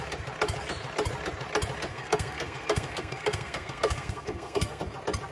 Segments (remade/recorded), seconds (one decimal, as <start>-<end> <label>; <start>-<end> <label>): 0.0-1.9 recorded; 1.9-4.8 remade; 4.8-5.3 recorded